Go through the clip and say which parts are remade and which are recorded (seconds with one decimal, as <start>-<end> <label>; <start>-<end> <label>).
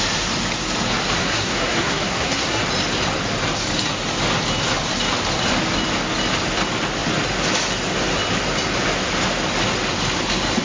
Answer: 0.0-1.2 recorded; 1.2-2.6 remade; 2.6-10.6 recorded